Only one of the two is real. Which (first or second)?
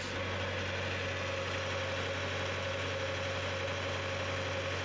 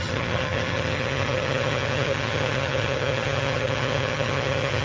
first